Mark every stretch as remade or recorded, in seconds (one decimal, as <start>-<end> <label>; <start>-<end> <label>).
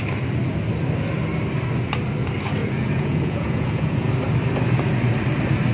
0.0-2.6 recorded; 2.6-4.1 remade; 4.1-5.7 recorded